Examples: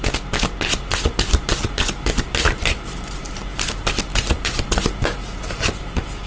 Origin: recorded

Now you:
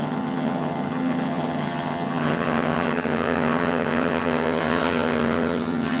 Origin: remade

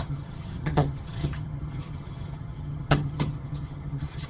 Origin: remade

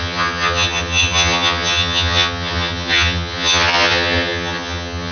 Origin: remade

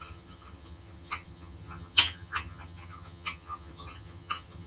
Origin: remade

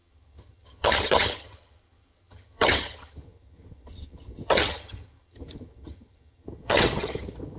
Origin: remade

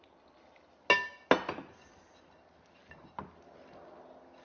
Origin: recorded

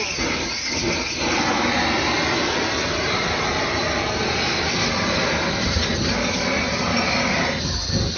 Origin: recorded